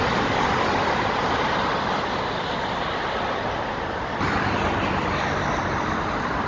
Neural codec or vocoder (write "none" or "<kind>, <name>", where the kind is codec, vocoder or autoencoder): none